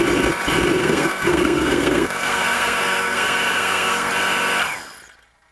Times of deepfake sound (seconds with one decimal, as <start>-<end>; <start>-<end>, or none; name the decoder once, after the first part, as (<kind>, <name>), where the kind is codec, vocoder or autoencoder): 0.8-4.1 (codec, SNAC)